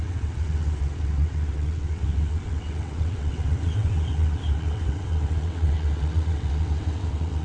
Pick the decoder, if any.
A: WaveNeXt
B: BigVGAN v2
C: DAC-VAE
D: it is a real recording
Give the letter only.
A